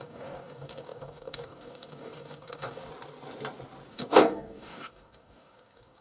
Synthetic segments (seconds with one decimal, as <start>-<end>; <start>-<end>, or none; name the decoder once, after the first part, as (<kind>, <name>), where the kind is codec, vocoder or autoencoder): 0.0-2.9 (codec, DAC); 3.9-6.0